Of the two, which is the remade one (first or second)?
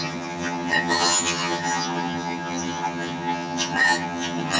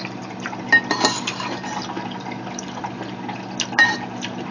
first